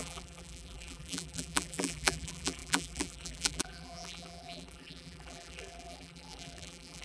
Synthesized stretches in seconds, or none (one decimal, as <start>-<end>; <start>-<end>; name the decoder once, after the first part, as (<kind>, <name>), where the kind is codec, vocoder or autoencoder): 0.0-7.0 (vocoder, BigVGAN v2)